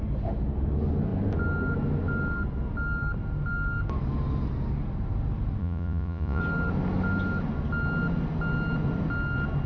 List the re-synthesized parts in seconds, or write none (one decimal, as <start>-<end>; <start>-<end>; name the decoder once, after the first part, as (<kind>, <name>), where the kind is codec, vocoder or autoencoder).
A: 5.6-6.4 (vocoder, Vocos)